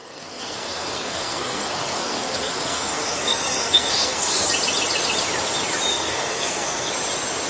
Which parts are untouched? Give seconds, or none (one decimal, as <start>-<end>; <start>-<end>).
4.5-5.9; 6.9-7.5